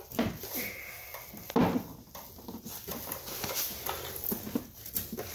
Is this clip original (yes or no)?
yes